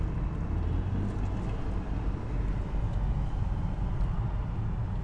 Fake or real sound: real